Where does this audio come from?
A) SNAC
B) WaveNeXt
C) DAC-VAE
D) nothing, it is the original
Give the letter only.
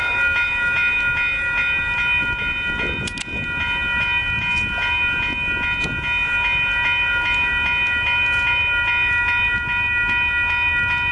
D